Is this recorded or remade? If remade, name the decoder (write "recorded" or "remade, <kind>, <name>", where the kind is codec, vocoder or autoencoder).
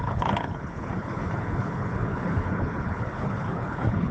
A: remade, codec, HILCodec